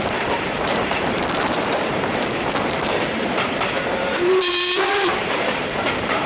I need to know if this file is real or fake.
fake